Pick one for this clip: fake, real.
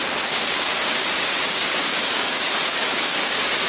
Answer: fake